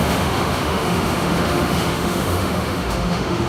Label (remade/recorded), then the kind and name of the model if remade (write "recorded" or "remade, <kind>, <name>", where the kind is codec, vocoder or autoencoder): remade, autoencoder, DAC-VAE